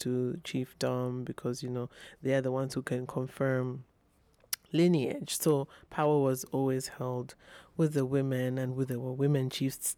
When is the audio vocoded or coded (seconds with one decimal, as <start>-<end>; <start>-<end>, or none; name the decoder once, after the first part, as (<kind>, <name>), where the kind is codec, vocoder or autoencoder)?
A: none